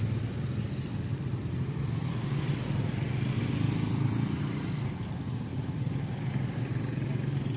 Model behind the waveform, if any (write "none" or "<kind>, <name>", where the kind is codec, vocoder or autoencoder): none